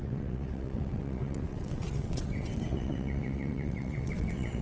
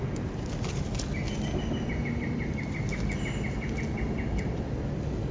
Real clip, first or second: second